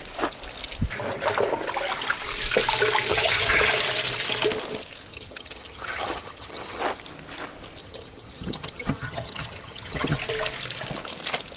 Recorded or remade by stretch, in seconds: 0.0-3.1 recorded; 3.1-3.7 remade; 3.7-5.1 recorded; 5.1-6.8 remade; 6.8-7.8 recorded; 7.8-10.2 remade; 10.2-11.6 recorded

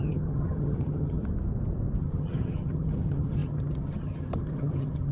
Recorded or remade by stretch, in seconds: 0.0-1.2 remade; 1.2-2.0 recorded; 2.0-5.1 remade

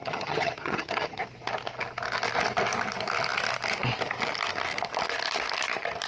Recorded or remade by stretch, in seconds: 0.0-1.2 remade; 1.2-6.1 recorded